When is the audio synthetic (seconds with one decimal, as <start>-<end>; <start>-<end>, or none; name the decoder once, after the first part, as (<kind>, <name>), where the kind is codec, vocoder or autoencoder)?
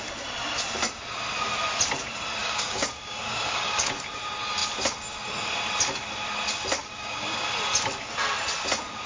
2.4-3.9 (codec, DAC); 6.8-7.5